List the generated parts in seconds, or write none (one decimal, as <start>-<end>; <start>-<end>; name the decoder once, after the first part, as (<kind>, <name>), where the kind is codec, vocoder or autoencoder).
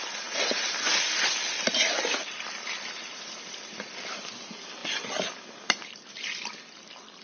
none